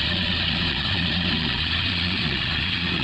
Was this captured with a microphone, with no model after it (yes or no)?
no